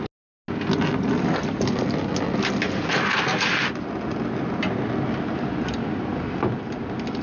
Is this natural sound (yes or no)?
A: yes